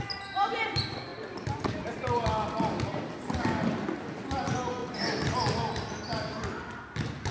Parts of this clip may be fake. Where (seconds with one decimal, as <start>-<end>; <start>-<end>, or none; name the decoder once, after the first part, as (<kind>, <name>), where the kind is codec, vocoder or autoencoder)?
none